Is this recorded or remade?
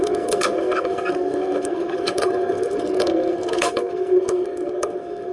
remade